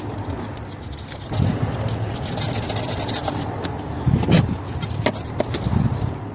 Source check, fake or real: real